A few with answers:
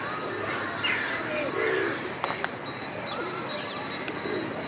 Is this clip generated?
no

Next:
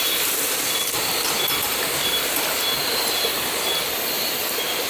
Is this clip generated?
no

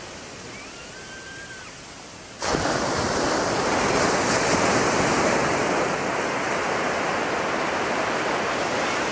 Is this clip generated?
no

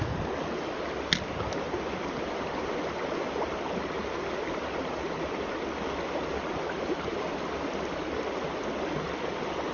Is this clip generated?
no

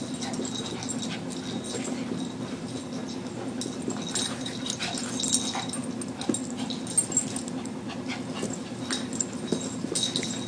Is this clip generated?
no